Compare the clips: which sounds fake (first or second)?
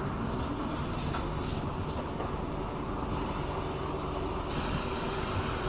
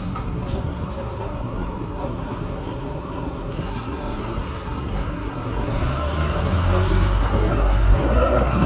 second